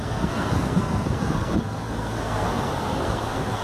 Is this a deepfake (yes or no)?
yes